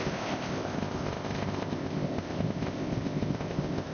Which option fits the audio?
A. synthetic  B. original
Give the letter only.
A